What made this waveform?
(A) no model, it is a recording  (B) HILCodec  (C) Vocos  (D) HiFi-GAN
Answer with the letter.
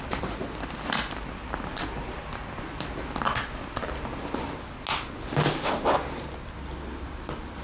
A